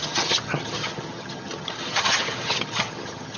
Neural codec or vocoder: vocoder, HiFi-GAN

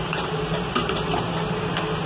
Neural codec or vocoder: none